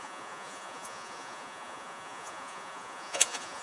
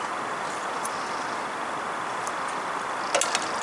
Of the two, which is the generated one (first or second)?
first